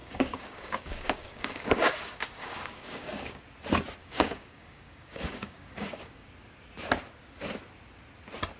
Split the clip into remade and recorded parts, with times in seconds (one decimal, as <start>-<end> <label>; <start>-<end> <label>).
0.0-3.4 remade; 3.4-4.0 recorded; 4.0-6.3 remade; 6.3-8.6 recorded